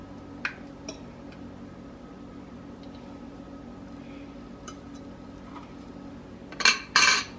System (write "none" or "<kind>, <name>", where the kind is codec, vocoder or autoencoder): none